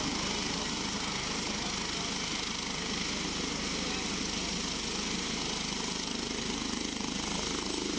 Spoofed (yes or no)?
no